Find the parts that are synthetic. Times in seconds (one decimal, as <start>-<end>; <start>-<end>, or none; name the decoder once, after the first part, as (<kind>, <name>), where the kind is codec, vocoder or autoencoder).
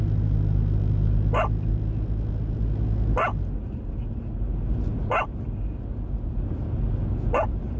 none